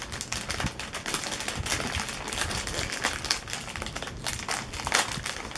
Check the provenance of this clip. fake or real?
real